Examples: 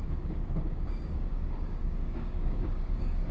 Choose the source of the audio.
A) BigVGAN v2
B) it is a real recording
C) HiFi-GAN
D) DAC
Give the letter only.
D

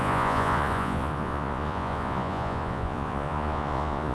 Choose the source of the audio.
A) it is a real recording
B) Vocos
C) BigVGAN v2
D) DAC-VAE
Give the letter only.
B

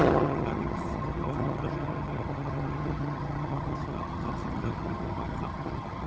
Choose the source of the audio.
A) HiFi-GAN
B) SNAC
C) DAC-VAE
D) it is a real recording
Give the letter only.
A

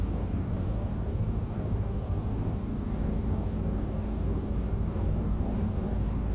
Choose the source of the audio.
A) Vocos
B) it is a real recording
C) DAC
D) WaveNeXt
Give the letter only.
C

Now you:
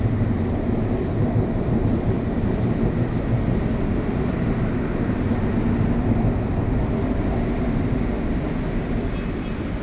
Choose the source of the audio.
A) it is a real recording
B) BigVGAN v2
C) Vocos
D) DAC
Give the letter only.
A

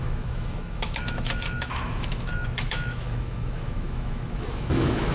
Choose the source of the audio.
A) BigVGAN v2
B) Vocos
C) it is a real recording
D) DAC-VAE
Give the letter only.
D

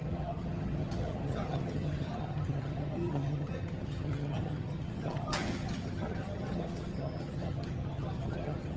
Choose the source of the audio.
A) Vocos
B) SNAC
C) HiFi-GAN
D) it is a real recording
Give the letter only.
C